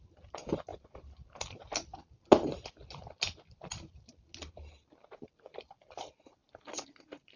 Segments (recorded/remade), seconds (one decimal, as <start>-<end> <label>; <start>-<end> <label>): 0.0-7.4 recorded